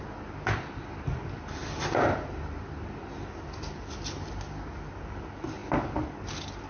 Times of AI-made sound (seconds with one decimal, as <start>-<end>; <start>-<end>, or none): none